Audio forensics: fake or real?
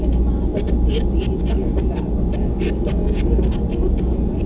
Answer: real